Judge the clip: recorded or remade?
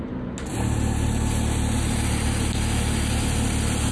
recorded